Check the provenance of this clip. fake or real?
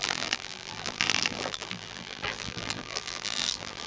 fake